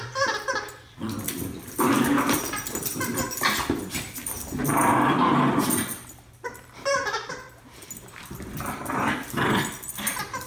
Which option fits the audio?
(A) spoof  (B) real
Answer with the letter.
A